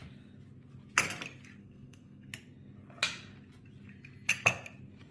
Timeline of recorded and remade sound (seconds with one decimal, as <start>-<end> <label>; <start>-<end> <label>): 0.0-1.6 recorded; 1.6-2.3 remade; 2.3-5.1 recorded